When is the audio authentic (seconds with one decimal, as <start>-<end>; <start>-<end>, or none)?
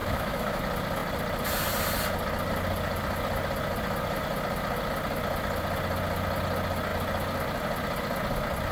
0.6-8.7